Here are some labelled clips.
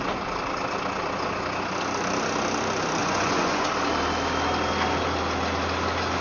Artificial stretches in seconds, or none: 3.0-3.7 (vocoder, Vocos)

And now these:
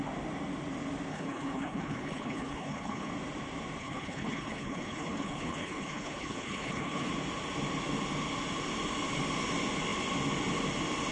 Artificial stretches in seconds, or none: 1.1-3.1 (codec, HILCodec); 3.8-7.1